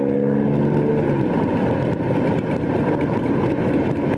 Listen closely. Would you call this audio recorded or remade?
recorded